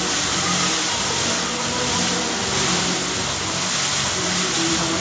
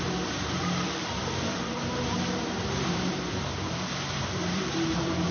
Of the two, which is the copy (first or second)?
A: second